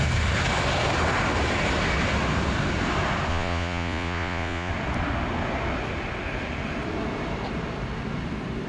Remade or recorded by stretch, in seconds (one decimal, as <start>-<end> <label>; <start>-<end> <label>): 0.0-3.3 recorded; 3.3-4.7 remade; 4.7-8.7 recorded